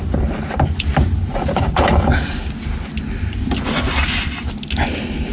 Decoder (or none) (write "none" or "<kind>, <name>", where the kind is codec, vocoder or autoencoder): none